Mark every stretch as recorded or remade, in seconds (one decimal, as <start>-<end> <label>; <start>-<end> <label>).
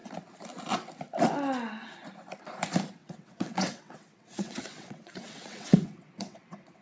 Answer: 0.0-3.0 recorded; 3.0-6.8 remade